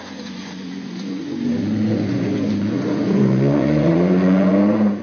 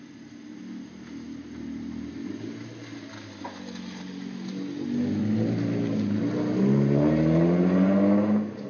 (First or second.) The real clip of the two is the second